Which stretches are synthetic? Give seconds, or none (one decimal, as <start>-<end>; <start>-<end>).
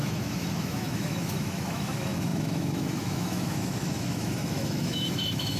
0.0-5.6